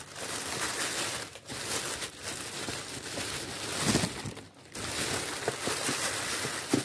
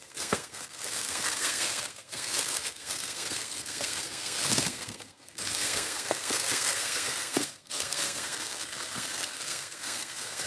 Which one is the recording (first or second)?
first